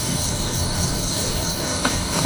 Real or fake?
fake